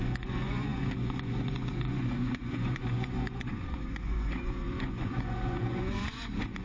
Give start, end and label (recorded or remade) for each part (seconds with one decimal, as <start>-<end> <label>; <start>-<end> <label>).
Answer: 0.0-6.6 remade